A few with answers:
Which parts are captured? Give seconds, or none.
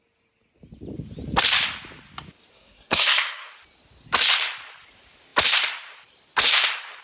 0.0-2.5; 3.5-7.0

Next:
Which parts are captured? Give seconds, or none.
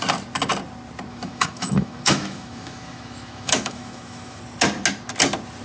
0.0-1.1; 4.4-5.6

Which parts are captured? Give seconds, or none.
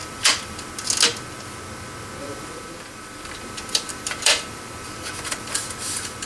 0.7-2.2